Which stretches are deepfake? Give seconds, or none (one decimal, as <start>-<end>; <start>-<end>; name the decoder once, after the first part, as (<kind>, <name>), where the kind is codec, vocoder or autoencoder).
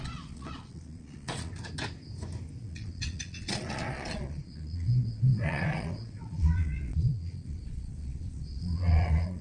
0.0-1.5 (vocoder, Vocos); 2.6-9.4